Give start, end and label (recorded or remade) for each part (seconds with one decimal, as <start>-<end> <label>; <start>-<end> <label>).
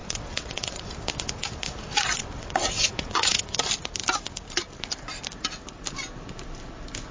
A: 0.0-0.9 remade; 0.9-2.2 recorded; 2.2-3.6 remade; 3.6-7.1 recorded